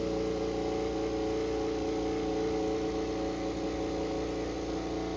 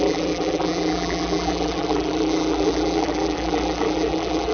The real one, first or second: first